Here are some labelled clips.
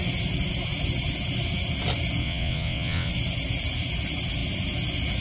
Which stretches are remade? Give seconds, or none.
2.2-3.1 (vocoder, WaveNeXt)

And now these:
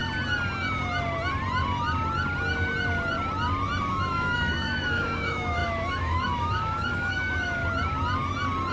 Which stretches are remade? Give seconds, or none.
3.9-7.6 (autoencoder, DAC-VAE)

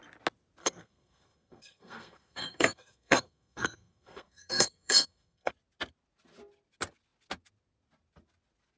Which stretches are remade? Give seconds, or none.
0.6-5.5 (codec, SNAC)

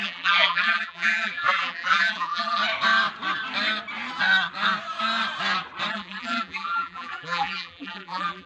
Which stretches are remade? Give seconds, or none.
0.0-2.6 (vocoder, BigVGAN v2); 5.9-8.5

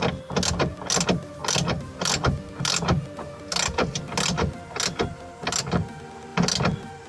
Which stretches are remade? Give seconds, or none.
none

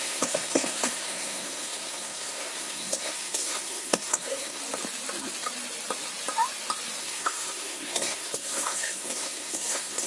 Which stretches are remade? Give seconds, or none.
0.0-4.6 (codec, SNAC); 7.0-10.1

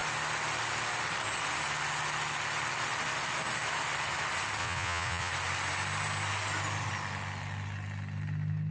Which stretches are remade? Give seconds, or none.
4.6-5.3 (vocoder, Vocos)